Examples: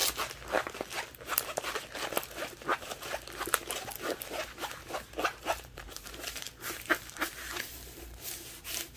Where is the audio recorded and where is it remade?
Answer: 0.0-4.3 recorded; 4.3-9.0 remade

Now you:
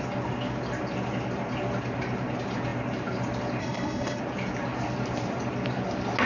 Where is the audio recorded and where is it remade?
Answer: 0.0-3.6 recorded; 3.6-4.2 remade; 4.2-6.3 recorded

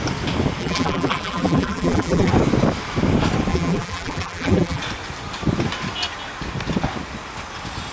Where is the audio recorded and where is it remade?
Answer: 0.0-0.6 recorded; 0.6-2.3 remade; 2.3-3.5 recorded; 3.5-4.8 remade; 4.8-7.9 recorded

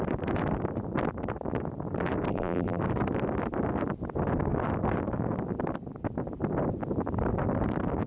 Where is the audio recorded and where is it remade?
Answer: 0.0-2.3 recorded; 2.3-2.8 remade; 2.8-8.1 recorded